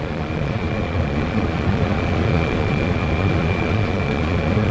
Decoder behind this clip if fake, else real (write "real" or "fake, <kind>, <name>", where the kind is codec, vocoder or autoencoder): fake, vocoder, Vocos